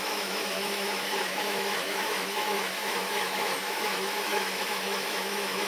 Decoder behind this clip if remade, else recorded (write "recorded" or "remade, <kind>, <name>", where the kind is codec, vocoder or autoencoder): remade, autoencoder, DAC-VAE